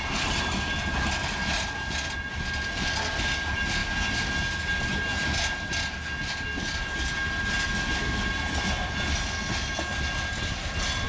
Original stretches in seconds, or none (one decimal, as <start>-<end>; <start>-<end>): 0.0-11.1